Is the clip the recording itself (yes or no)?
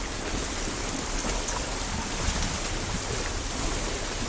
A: yes